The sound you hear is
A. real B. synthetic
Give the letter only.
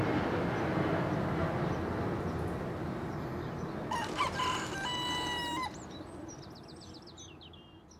A